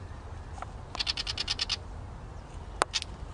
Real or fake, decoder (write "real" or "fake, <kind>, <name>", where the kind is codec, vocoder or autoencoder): real